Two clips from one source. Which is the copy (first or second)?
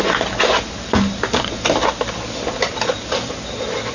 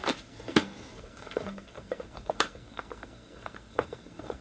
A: second